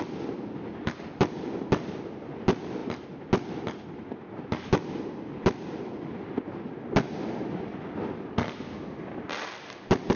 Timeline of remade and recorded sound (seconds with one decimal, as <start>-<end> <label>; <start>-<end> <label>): 0.0-10.2 recorded